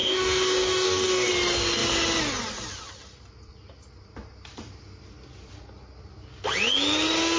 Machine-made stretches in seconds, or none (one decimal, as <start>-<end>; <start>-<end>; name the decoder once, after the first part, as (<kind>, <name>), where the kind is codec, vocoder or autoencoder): 0.0-1.3 (codec, DAC)